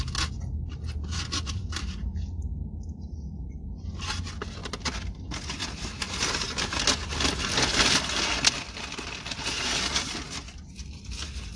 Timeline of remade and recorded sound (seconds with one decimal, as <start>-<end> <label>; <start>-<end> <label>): 0.0-11.6 recorded